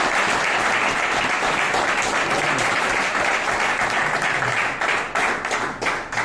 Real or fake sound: real